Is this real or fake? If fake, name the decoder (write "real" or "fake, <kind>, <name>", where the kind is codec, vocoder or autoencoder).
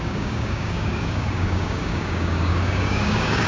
fake, codec, DAC